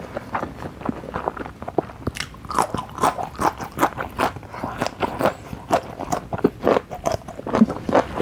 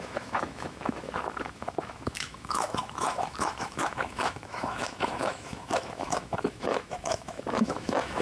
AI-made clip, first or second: second